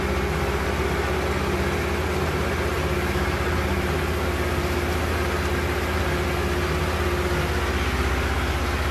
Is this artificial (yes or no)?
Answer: no